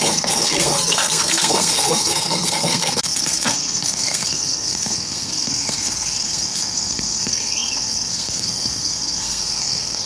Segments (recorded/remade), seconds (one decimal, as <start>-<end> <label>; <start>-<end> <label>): 0.0-10.1 remade